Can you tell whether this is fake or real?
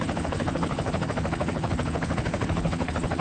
fake